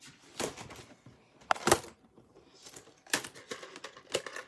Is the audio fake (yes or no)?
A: no